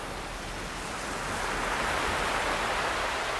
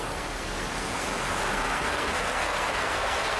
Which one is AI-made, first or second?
second